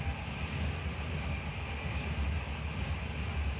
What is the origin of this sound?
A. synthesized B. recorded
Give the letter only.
B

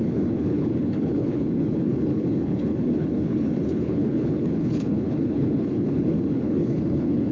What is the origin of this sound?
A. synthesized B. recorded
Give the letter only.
A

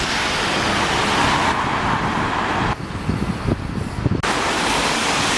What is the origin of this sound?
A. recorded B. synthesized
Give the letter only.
A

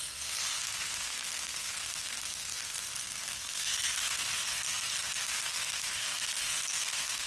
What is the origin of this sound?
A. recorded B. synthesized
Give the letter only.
B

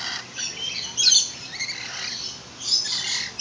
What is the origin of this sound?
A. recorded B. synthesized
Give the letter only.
A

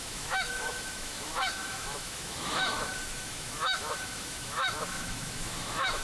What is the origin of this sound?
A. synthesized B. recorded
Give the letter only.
A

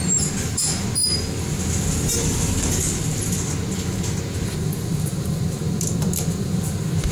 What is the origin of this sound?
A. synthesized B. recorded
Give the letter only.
B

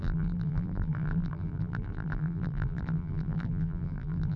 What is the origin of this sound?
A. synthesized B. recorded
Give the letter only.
A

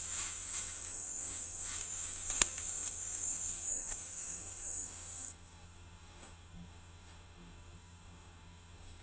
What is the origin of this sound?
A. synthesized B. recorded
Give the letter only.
A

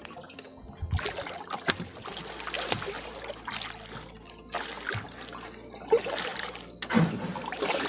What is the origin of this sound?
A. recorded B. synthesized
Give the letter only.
A